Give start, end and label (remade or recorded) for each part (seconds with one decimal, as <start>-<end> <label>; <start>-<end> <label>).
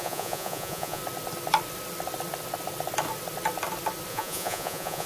0.0-1.0 remade; 1.0-4.1 recorded; 4.1-5.1 remade